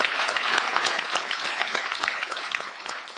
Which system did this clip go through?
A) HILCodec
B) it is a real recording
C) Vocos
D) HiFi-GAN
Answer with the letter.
A